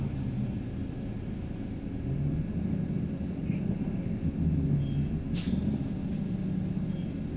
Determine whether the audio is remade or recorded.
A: recorded